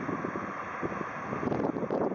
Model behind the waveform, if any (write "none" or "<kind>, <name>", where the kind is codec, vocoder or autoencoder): none